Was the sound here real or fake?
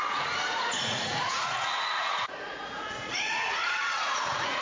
fake